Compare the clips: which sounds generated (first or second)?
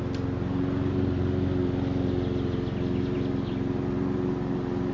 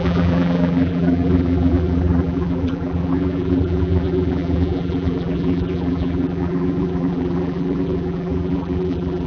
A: second